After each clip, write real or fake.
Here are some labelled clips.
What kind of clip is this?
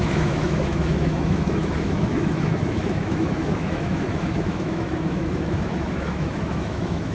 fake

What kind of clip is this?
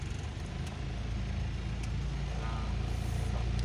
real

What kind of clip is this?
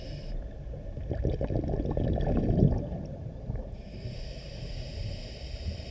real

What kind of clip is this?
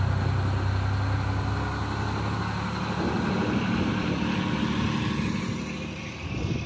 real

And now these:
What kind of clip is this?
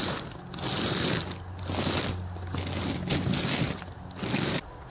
real